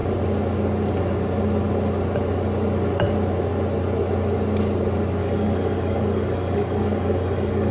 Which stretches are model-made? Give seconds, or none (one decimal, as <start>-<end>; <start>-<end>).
5.2-7.7